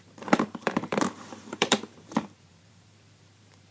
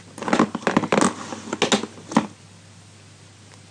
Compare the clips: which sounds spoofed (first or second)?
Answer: first